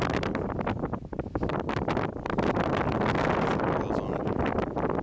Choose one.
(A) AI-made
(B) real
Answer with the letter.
B